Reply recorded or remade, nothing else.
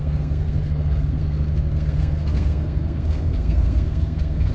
remade